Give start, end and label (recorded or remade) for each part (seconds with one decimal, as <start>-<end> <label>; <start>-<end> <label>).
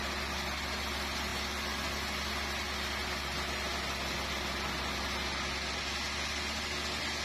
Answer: 0.0-7.2 recorded